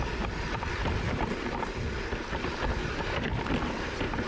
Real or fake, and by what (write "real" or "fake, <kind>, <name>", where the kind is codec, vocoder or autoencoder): real